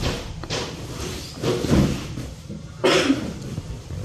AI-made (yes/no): no